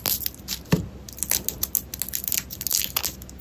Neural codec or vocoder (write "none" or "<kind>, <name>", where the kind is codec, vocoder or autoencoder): none